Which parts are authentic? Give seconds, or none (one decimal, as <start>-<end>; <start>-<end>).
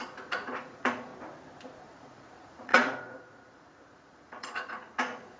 1.1-1.8